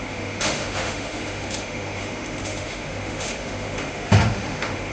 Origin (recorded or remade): remade